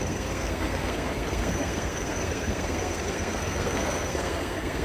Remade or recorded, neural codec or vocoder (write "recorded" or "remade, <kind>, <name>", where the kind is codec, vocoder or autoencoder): remade, codec, SNAC